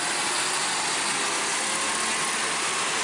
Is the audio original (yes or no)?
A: yes